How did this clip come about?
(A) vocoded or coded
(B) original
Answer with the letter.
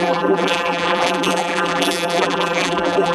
A